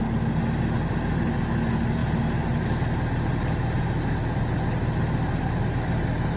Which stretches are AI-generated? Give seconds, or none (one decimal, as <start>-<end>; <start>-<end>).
none